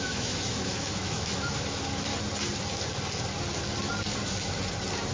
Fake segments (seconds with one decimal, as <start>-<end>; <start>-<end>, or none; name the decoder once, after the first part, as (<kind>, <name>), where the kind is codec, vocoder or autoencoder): 0.0-2.1 (autoencoder, DAC-VAE)